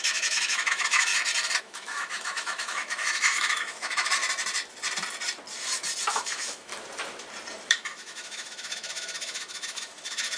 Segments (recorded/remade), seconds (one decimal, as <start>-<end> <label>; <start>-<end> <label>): 0.0-1.1 remade; 1.1-1.6 recorded; 1.6-4.2 remade; 4.2-6.1 recorded; 6.1-6.7 remade; 6.7-7.7 recorded; 7.7-10.4 remade